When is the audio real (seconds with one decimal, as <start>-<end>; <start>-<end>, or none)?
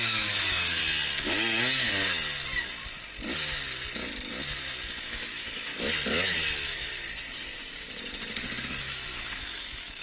0.8-5.0; 5.7-8.8